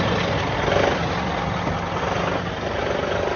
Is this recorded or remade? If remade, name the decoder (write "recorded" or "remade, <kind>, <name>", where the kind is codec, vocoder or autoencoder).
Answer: recorded